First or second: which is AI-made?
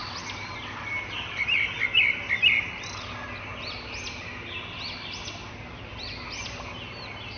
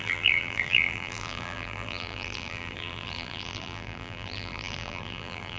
second